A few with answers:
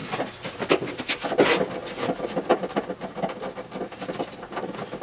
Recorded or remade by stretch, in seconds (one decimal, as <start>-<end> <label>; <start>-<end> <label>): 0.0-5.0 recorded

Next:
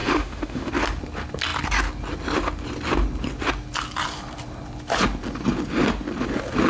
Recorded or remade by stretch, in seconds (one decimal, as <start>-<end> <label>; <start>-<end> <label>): 0.0-0.7 remade; 0.7-6.7 recorded

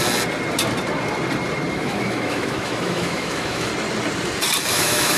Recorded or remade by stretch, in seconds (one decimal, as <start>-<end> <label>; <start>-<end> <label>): 0.0-1.7 recorded; 1.7-3.7 remade; 3.7-4.7 recorded; 4.7-5.2 remade